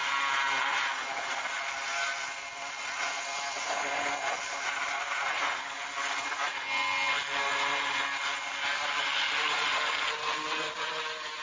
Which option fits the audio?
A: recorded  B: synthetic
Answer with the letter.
A